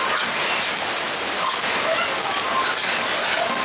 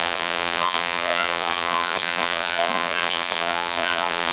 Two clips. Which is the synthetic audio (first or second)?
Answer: second